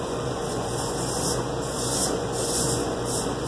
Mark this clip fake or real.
fake